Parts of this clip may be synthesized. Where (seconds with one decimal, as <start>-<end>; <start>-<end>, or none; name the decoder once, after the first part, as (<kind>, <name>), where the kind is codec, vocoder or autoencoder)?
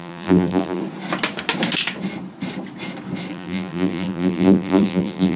0.0-0.8 (vocoder, BigVGAN v2); 3.3-5.4